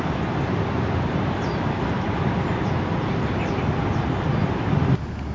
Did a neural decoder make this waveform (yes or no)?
no